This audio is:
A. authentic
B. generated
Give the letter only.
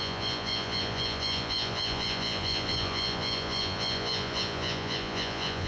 B